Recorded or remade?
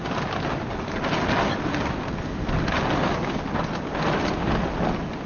recorded